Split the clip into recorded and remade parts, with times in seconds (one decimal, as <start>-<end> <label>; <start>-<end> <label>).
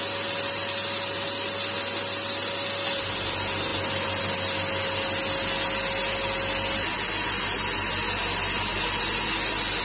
0.0-9.8 recorded